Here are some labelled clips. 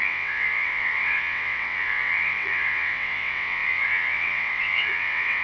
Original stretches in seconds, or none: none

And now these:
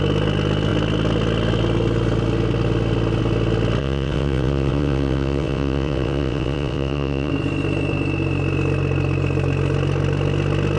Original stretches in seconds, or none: 0.0-3.8; 7.3-10.8

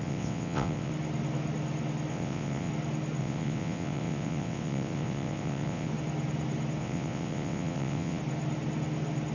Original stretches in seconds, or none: 0.9-2.1; 2.7-3.2; 5.9-6.8; 8.2-9.3

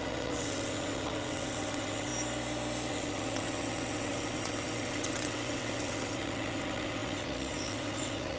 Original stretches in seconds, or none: 2.1-2.9

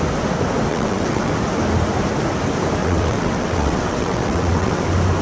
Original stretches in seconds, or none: 0.0-0.7; 1.3-2.8; 4.8-5.2

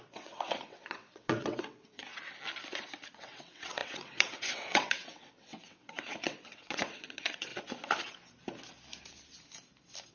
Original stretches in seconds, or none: 2.0-3.1; 7.5-10.1

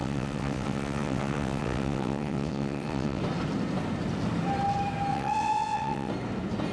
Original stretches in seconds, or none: 3.2-5.1; 6.1-6.7